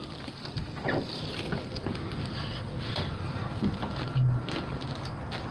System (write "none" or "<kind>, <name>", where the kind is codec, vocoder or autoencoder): none